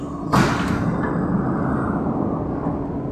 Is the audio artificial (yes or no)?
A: no